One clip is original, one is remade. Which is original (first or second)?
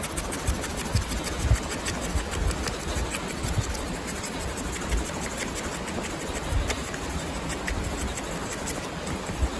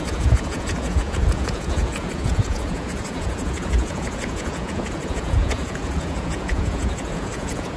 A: first